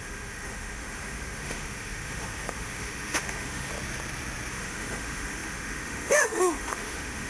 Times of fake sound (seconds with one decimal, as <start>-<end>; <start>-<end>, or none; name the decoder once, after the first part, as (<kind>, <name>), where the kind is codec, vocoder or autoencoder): 0.0-3.7 (autoencoder, DAC-VAE); 4.5-7.3